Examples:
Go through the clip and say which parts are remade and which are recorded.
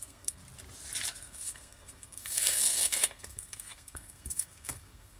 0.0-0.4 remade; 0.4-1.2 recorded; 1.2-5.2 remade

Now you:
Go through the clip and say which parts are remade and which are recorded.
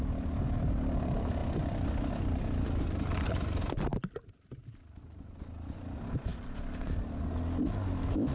0.0-8.3 recorded